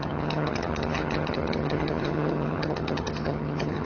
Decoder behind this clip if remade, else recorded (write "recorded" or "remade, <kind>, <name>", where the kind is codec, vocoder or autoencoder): remade, vocoder, HiFi-GAN